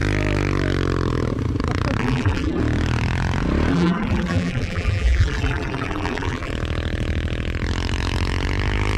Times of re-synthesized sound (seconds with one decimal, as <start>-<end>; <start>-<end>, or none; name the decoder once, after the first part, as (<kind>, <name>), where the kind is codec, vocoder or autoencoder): 2.0-2.6 (vocoder, BigVGAN v2); 3.7-6.5

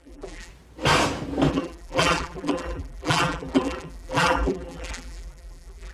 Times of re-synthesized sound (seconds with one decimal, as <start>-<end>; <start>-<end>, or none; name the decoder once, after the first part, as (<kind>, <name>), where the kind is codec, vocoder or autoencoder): 0.0-0.5 (vocoder, BigVGAN v2); 1.5-5.9

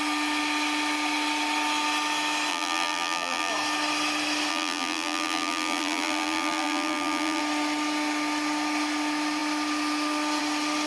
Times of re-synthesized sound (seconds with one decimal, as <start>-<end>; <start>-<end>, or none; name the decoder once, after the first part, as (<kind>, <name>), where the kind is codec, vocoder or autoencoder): 2.5-3.5 (vocoder, BigVGAN v2); 4.5-7.4

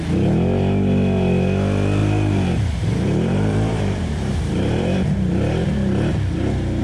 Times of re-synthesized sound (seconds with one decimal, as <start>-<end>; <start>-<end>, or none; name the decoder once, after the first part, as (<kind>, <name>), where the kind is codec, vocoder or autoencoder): 2.0-6.1 (vocoder, BigVGAN v2)

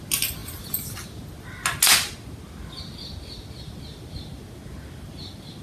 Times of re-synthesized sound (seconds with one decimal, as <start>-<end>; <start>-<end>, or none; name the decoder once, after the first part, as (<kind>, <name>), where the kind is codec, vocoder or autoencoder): none

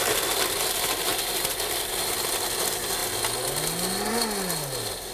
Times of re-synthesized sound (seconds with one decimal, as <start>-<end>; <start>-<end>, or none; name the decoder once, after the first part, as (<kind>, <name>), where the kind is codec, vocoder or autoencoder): 1.1-1.9 (vocoder, BigVGAN v2)

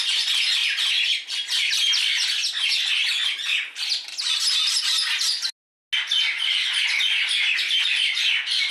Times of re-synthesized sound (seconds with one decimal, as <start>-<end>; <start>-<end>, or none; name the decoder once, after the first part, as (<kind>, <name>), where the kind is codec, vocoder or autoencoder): none